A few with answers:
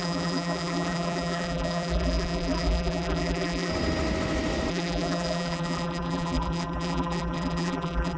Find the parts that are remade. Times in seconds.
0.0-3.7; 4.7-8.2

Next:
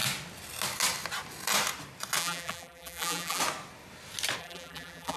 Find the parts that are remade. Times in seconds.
2.2-3.4; 4.4-5.2

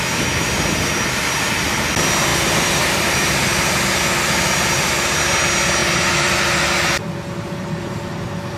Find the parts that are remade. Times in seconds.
2.3-3.3; 5.8-7.3

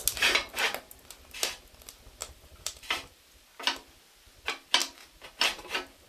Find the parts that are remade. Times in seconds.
2.2-3.4

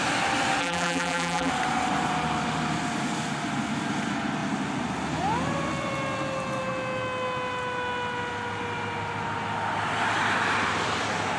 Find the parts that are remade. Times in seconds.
0.6-1.5

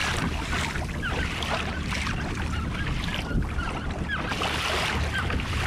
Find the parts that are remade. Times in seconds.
none

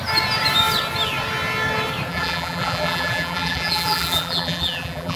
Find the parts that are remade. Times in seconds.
2.1-5.2